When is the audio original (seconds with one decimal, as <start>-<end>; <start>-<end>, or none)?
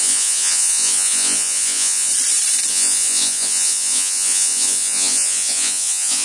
2.1-2.7